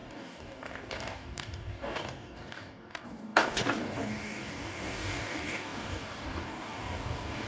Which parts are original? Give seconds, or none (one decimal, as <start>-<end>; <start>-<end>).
none